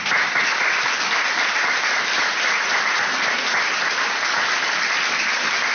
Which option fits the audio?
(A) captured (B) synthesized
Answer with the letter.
A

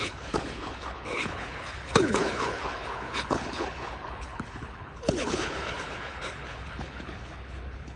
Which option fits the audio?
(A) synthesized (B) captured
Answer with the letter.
A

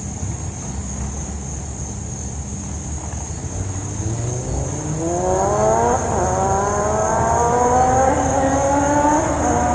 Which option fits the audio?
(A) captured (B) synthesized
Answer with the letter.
A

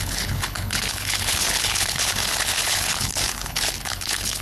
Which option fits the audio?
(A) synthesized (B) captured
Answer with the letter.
A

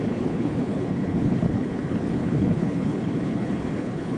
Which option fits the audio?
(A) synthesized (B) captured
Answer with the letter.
A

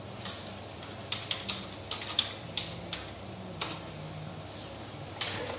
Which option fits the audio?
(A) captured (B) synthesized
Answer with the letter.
A